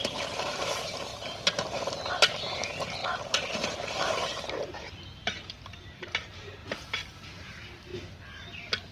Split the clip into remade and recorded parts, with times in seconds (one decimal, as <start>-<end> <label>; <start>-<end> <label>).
0.0-1.1 remade; 1.1-2.1 recorded; 2.1-7.9 remade; 7.9-8.4 recorded; 8.4-8.9 remade